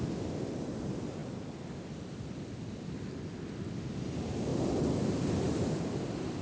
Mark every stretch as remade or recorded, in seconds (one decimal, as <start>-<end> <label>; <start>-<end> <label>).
0.0-1.2 recorded; 1.2-2.8 remade; 2.8-4.5 recorded; 4.5-6.4 remade